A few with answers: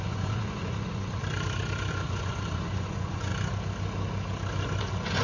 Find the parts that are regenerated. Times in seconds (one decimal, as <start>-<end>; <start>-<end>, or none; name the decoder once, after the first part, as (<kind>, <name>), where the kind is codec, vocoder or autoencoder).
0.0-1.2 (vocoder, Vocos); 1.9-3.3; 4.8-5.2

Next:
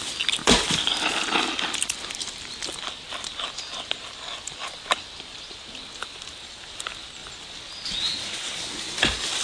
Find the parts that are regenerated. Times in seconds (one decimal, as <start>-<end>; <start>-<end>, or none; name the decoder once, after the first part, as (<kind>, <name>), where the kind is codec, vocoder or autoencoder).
0.4-5.4 (vocoder, BigVGAN v2)

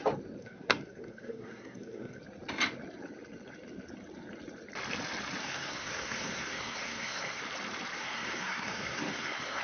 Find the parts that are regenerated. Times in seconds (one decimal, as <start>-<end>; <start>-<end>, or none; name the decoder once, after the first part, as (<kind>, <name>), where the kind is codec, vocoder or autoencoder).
0.4-2.2 (codec, SNAC); 5.4-7.4; 8.0-9.6

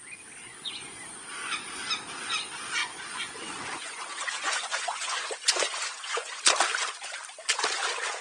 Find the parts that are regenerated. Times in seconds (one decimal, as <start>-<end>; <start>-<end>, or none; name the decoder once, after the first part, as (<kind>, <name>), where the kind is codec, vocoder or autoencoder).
0.5-1.8 (vocoder, Vocos); 2.8-6.4